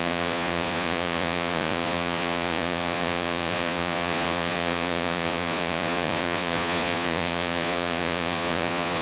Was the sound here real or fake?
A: fake